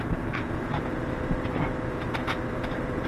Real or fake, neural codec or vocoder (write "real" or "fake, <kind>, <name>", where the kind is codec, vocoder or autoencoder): fake, vocoder, BigVGAN v2